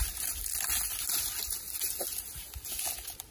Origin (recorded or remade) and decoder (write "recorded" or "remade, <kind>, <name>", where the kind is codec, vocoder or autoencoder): recorded